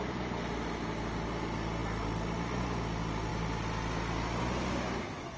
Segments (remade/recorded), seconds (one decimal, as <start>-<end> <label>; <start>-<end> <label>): 0.0-5.4 recorded